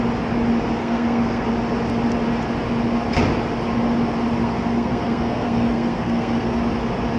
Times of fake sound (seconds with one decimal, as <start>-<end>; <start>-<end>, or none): 0.8-1.5; 4.4-6.6